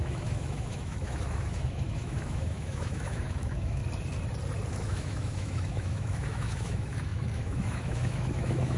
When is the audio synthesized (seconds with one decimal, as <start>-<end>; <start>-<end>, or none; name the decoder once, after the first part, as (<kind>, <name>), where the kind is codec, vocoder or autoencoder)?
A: 0.0-3.8 (autoencoder, DAC-VAE); 4.7-8.8